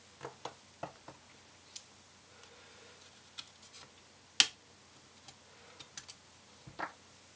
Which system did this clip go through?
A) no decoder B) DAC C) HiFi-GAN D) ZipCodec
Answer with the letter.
A